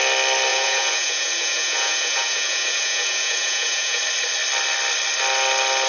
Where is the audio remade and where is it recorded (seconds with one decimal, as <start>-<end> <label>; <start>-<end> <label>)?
0.0-0.5 recorded; 0.5-4.0 remade; 4.0-5.9 recorded